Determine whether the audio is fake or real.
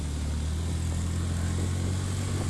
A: real